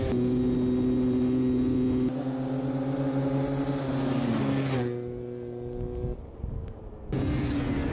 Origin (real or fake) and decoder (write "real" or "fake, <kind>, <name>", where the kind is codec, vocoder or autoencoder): real